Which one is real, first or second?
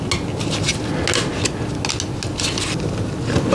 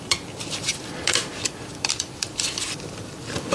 first